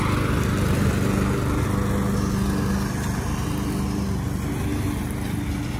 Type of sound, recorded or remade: recorded